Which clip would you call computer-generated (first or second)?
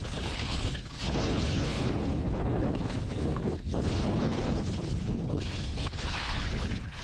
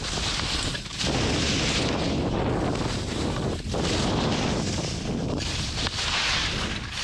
first